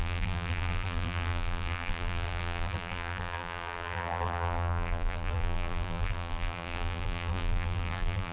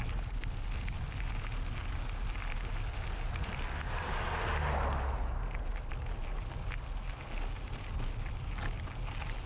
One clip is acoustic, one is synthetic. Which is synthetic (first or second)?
first